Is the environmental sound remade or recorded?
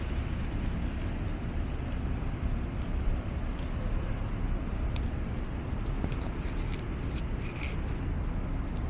recorded